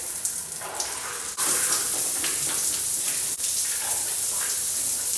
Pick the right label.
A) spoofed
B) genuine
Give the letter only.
A